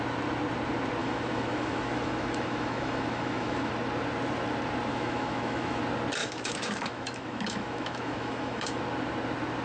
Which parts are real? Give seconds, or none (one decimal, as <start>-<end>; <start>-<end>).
0.0-1.0; 3.7-4.9; 5.8-6.2; 8.8-9.6